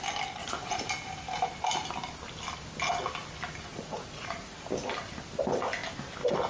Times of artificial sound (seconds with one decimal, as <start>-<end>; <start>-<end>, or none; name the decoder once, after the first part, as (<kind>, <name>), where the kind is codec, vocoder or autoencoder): 0.4-0.9 (vocoder, Vocos); 3.7-4.7